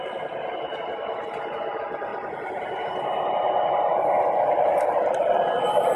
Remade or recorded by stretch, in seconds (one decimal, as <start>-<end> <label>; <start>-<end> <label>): 0.0-2.1 recorded; 2.1-3.3 remade; 3.3-3.9 recorded; 3.9-4.9 remade; 4.9-6.0 recorded